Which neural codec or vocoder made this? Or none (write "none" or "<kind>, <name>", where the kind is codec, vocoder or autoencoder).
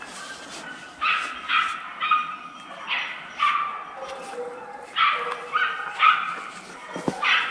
none